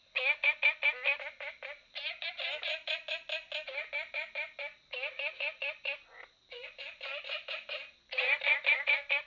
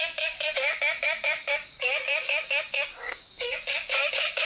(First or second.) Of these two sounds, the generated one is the second